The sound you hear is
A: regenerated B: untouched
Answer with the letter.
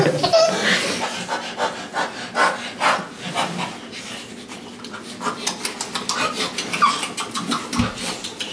B